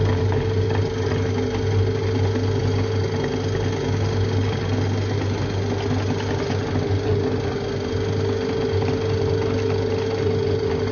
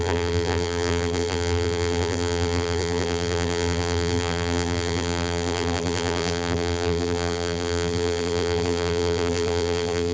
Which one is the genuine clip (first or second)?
first